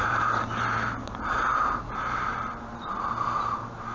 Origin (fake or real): fake